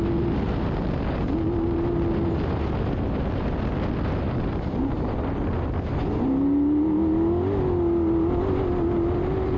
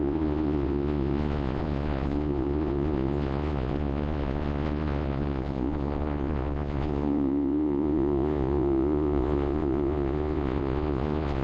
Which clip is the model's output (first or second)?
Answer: second